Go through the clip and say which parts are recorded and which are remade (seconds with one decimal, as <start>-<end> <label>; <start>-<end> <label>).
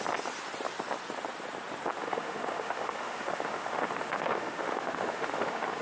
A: 0.0-2.0 recorded; 2.0-5.8 remade